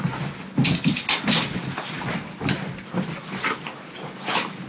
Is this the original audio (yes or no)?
yes